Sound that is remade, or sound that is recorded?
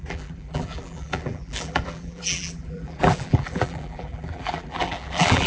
remade